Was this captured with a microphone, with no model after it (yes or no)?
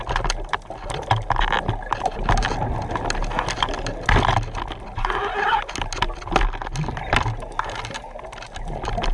yes